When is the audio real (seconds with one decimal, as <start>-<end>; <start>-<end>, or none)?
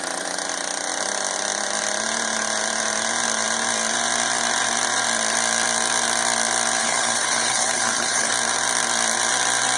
0.0-6.8; 8.3-9.8